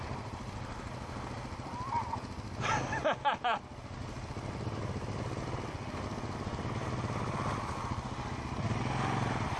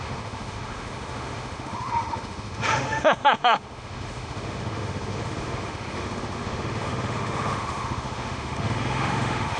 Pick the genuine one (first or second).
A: first